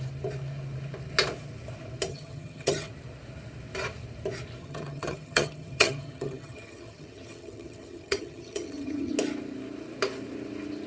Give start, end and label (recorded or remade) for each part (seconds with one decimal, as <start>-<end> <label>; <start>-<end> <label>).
0.0-2.1 recorded; 2.1-2.9 remade; 2.9-4.6 recorded; 4.6-9.1 remade; 9.1-10.9 recorded